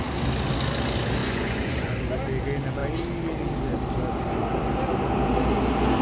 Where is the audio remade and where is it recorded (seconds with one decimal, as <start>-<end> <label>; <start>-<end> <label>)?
0.0-1.2 recorded; 1.2-2.0 remade; 2.0-6.0 recorded